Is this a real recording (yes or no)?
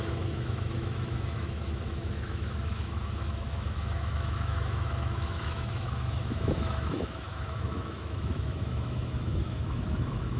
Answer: no